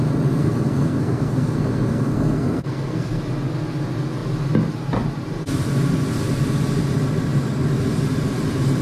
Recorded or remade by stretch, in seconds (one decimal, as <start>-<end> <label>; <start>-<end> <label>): 0.0-0.4 recorded; 0.4-3.2 remade; 3.2-8.8 recorded